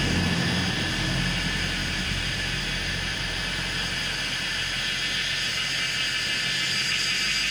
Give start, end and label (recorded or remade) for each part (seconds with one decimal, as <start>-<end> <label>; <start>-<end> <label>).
0.0-1.8 recorded; 1.8-3.4 remade; 3.4-7.5 recorded